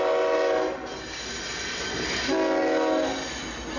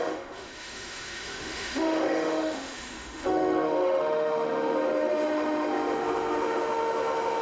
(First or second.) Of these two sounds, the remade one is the second